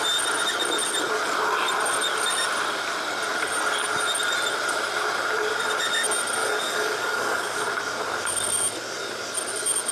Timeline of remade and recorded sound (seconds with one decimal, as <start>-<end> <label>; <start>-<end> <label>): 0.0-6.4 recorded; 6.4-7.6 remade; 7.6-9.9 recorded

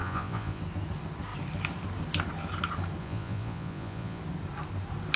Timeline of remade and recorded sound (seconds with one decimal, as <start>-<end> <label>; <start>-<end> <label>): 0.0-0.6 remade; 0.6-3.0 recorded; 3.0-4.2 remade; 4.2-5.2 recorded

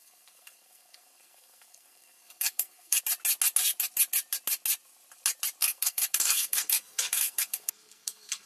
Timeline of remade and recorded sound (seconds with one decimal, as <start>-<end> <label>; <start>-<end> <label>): 0.0-3.0 remade; 3.0-5.6 recorded; 5.6-8.5 remade

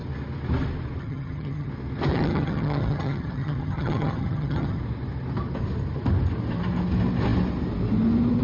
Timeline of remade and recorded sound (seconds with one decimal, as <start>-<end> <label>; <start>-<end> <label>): 0.0-1.0 recorded; 1.0-1.7 remade; 1.7-2.1 recorded; 2.1-4.8 remade; 4.8-8.4 recorded

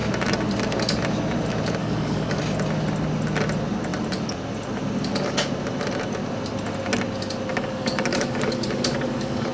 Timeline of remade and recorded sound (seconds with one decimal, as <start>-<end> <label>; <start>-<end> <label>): 0.0-1.8 recorded; 1.8-2.4 remade; 2.4-7.5 recorded; 7.5-9.5 remade

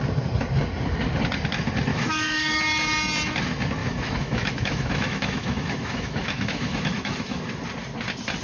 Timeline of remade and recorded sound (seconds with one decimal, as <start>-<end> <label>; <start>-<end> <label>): 0.0-1.9 recorded; 1.9-2.6 remade; 2.6-3.8 recorded; 3.8-7.4 remade; 7.4-8.4 recorded

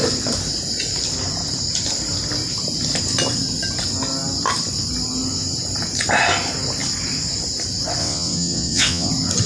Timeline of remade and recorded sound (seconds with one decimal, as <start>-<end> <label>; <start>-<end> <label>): 0.0-8.0 recorded; 8.0-9.1 remade; 9.1-9.5 recorded

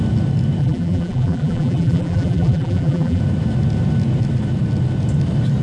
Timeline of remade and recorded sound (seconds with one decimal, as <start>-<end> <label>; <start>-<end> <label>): 0.0-0.6 recorded; 0.6-3.2 remade; 3.2-5.6 recorded